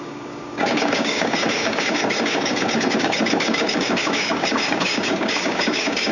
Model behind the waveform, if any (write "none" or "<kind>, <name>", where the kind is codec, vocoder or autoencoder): codec, DAC